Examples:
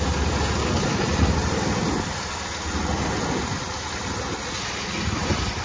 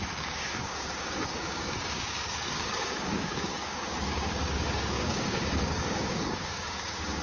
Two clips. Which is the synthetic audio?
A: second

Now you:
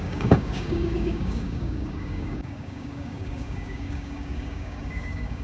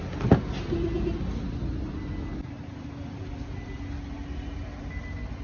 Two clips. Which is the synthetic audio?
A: first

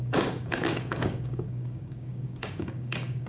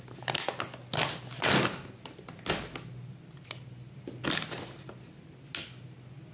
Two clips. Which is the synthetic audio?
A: first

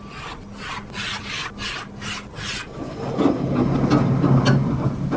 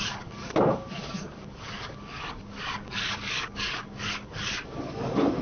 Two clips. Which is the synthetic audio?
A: second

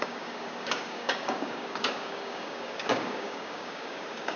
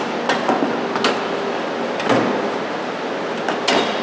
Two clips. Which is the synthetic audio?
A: first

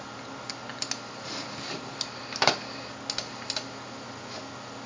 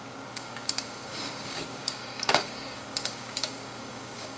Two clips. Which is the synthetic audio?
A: second